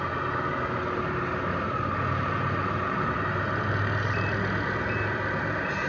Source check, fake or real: real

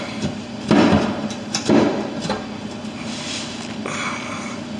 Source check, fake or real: real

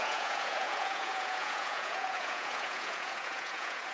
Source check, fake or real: fake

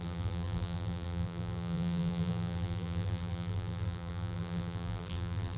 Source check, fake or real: fake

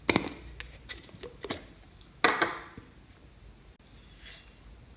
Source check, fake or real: real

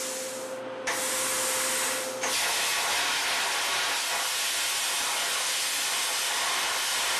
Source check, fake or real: real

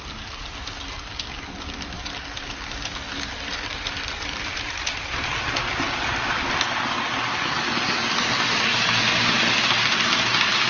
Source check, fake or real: real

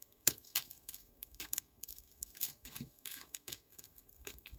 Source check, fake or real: fake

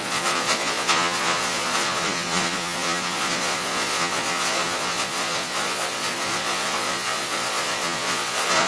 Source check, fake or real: fake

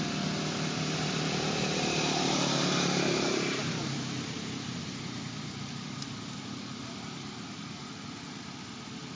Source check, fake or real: fake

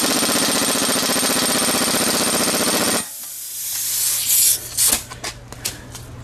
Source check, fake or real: real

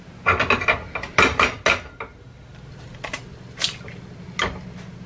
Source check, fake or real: real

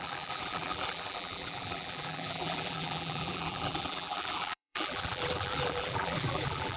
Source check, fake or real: fake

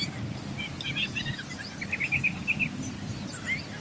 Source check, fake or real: real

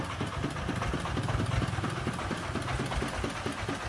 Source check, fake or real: real